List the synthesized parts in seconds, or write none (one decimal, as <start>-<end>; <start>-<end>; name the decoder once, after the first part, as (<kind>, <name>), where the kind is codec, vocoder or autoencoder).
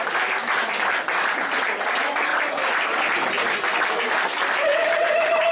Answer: none